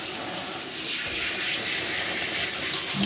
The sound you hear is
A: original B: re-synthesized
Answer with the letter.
A